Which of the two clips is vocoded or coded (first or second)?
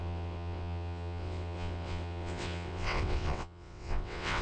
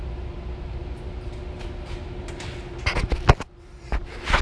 first